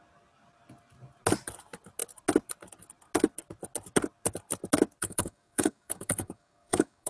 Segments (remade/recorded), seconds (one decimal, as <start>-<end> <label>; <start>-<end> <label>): 0.0-5.0 recorded; 5.0-7.1 remade